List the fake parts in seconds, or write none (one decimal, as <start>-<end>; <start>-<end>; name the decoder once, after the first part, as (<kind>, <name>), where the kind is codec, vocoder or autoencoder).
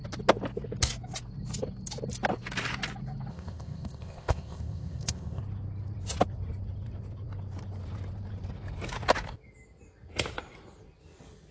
3.3-5.4 (codec, ZipCodec)